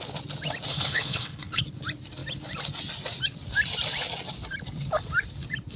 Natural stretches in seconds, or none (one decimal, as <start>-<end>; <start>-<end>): 0.0-0.7; 1.6-5.8